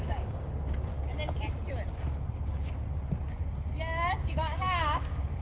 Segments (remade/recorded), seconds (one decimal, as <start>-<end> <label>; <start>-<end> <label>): 0.0-0.9 remade; 0.9-4.1 recorded; 4.1-5.4 remade